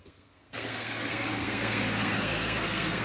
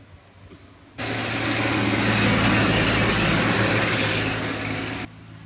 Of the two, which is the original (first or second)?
second